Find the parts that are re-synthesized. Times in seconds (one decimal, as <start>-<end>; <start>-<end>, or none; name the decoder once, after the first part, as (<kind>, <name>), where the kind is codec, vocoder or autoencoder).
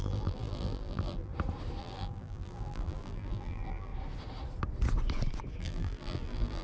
0.0-1.3 (vocoder, BigVGAN v2); 1.8-3.9; 5.6-6.6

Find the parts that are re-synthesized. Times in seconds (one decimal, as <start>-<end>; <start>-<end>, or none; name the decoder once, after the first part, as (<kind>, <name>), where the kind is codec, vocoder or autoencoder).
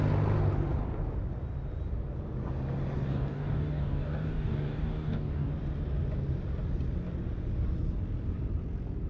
3.1-5.5 (codec, DAC)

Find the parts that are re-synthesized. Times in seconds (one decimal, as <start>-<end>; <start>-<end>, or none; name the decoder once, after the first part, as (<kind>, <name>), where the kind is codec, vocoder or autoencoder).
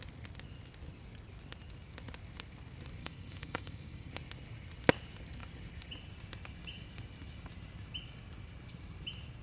3.0-4.1 (codec, DAC)